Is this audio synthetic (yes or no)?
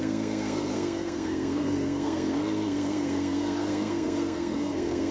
yes